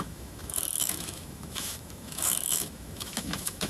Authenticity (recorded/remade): remade